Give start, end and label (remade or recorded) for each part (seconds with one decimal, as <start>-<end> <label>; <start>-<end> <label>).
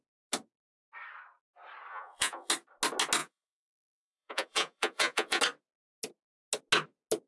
0.0-1.9 recorded; 1.9-2.5 remade; 2.5-3.2 recorded; 3.2-5.4 remade; 5.4-7.3 recorded